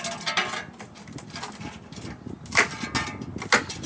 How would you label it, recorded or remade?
recorded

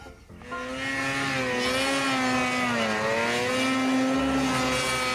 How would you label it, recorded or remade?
recorded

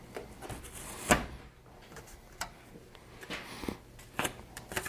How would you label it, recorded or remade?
recorded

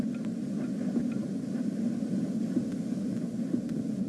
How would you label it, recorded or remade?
recorded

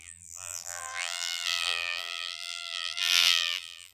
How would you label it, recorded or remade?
remade